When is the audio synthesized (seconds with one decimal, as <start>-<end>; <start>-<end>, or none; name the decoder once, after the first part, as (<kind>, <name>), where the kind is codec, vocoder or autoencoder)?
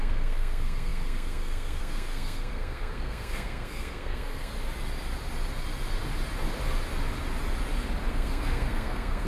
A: 0.0-4.5 (codec, SNAC); 8.1-9.3